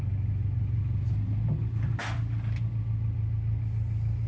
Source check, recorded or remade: recorded